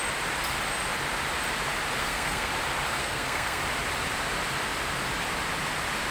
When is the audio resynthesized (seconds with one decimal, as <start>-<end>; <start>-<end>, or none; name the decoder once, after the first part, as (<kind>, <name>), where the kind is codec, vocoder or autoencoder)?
2.0-2.5 (codec, SNAC); 3.0-3.6